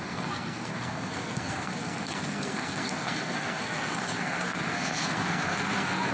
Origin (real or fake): fake